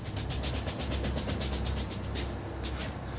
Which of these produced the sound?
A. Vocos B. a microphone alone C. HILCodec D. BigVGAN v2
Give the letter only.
B